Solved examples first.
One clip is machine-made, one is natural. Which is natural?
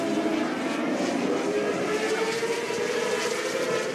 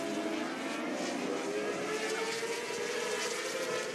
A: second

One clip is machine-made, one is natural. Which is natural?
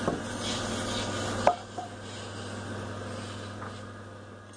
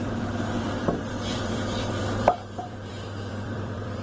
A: first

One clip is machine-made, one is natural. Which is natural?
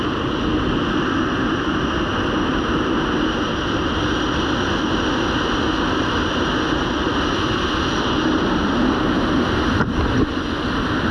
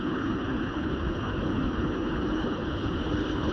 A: first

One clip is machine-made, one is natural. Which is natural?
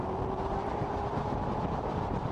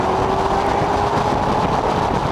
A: second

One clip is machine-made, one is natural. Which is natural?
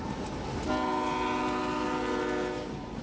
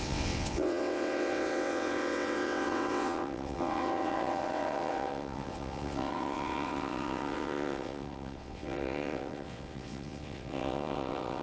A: first